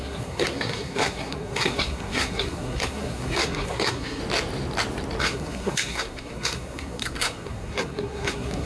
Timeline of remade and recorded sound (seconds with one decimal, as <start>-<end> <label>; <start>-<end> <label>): 0.0-4.2 remade; 4.2-5.2 recorded; 5.2-8.7 remade

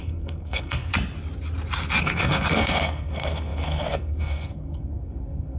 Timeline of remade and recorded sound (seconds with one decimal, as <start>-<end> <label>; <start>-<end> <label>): 0.0-0.9 remade; 0.9-2.0 recorded; 2.0-5.6 remade

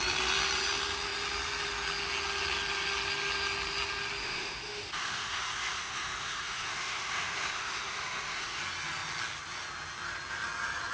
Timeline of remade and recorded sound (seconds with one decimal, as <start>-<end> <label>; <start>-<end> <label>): 0.0-4.2 recorded; 4.2-8.6 remade; 8.6-10.9 recorded

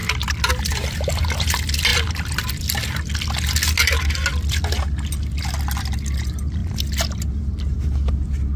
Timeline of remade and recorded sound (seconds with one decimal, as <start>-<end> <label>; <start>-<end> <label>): 0.0-8.6 recorded

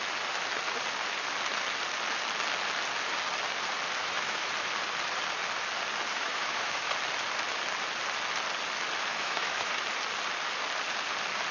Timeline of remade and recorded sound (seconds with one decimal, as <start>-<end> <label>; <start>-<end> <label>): 0.0-4.0 recorded; 4.0-4.5 remade; 4.5-6.1 recorded; 6.1-6.9 remade; 6.9-9.1 recorded; 9.1-9.7 remade; 9.7-11.5 recorded

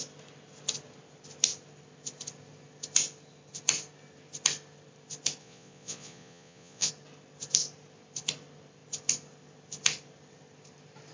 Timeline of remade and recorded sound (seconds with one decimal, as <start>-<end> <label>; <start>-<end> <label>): 0.0-5.4 recorded; 5.4-6.9 remade; 6.9-11.1 recorded

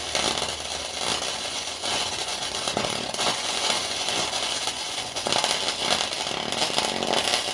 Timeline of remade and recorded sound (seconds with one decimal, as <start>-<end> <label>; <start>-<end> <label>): 0.0-1.3 recorded; 1.3-5.3 remade; 5.3-7.5 recorded

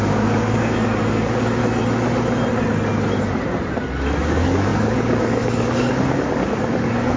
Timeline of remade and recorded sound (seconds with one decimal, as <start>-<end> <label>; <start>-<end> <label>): 0.0-1.6 remade; 1.6-4.2 recorded; 4.2-7.2 remade